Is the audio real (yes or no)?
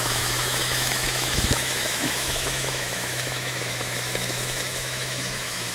no